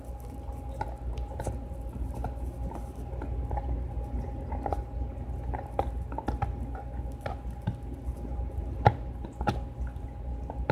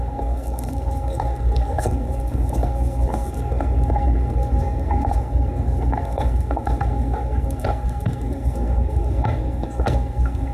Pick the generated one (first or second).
second